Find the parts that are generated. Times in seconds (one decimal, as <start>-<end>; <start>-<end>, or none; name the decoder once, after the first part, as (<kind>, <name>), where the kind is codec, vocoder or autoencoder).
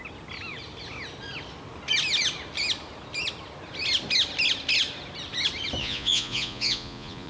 5.8-7.3 (vocoder, Vocos)